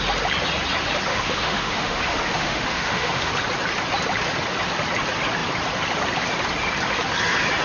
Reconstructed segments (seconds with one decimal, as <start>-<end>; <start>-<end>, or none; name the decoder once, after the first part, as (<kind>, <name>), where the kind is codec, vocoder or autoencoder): 1.1-3.3 (autoencoder, DAC-VAE)